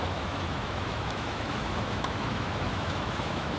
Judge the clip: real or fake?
fake